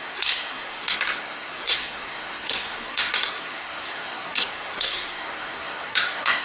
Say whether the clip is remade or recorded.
remade